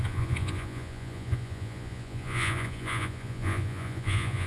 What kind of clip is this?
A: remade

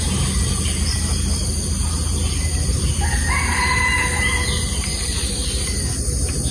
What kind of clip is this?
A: recorded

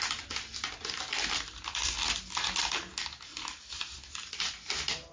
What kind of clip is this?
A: recorded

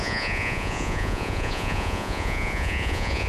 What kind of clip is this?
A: remade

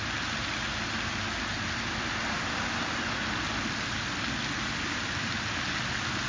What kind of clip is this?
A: recorded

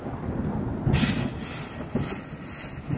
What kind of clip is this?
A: recorded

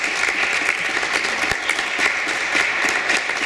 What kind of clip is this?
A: recorded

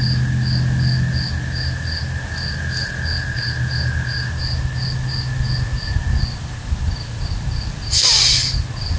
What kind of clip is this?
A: recorded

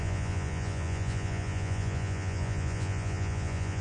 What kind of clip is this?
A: remade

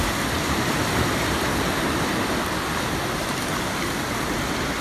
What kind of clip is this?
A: recorded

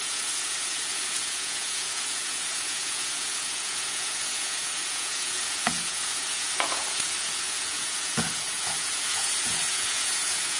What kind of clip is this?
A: remade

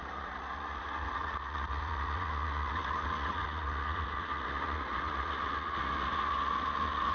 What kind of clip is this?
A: remade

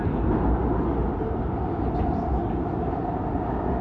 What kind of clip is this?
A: recorded